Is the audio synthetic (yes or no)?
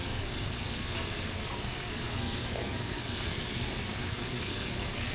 yes